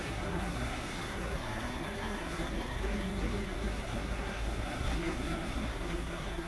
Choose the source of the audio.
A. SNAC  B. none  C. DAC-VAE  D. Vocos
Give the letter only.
A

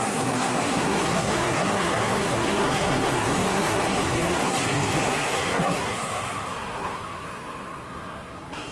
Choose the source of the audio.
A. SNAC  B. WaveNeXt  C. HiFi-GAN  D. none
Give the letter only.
A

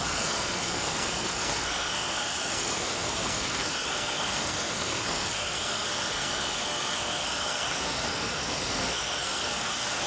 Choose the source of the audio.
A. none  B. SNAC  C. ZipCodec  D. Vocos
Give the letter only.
B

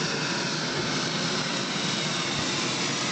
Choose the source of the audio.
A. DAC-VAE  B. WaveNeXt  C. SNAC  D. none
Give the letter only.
D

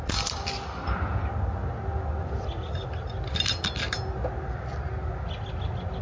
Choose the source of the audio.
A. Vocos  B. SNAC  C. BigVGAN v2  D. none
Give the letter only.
D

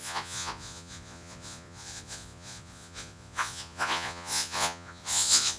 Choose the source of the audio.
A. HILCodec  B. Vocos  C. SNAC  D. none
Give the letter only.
B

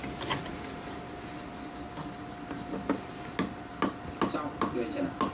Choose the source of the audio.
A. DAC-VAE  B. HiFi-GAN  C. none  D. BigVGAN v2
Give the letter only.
C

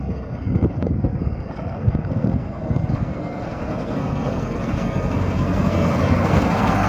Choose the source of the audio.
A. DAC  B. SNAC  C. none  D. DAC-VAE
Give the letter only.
B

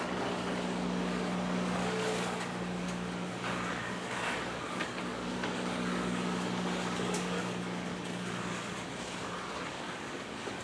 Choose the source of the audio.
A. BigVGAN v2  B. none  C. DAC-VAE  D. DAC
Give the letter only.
D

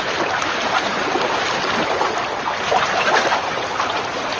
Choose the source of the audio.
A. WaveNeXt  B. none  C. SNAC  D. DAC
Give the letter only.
B